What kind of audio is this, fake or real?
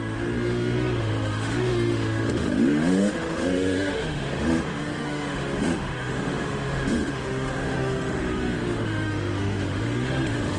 fake